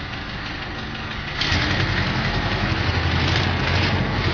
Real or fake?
fake